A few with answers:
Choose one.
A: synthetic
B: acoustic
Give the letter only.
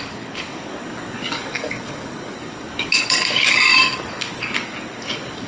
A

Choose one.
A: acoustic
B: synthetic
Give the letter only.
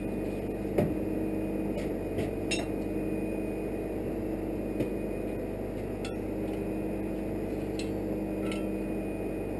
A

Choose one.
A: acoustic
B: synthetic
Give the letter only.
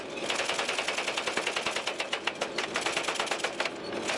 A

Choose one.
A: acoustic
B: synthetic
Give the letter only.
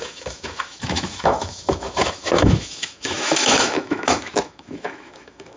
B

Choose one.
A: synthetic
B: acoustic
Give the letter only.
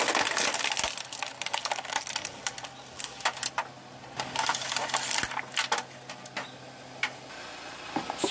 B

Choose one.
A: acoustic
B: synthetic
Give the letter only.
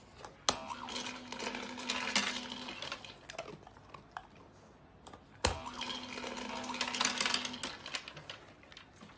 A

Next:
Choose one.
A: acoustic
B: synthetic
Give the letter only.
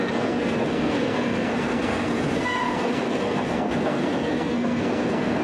B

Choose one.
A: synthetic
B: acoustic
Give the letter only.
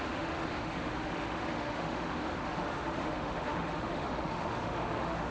A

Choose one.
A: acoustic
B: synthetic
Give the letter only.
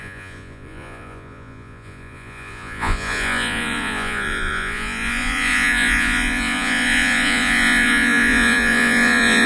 B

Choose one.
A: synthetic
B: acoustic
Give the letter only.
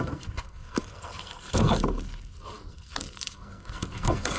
A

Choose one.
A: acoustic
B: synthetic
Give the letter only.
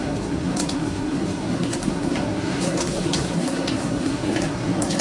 B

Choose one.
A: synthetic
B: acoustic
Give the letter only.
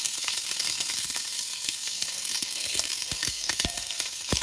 A